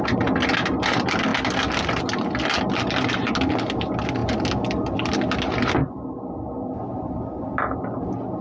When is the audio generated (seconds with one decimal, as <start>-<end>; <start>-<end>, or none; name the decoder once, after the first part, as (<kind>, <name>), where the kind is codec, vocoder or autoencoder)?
none